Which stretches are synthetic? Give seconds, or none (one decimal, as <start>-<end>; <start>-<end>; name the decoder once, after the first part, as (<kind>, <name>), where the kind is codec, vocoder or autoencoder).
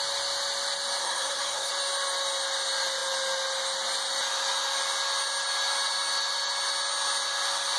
1.0-1.7 (codec, SNAC)